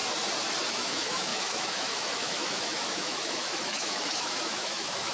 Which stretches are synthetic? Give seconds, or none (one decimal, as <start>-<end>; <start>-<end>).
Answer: 0.7-5.1